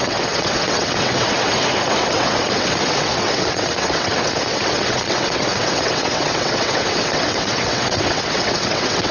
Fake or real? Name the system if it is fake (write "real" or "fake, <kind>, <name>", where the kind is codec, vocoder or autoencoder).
fake, vocoder, WaveNeXt